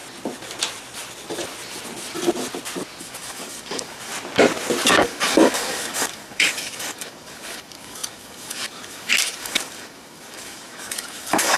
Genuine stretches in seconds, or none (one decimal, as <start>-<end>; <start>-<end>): 0.0-3.0; 4.1-4.9